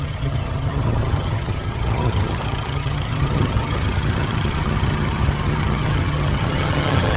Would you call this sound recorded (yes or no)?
no